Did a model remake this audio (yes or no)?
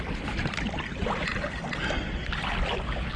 no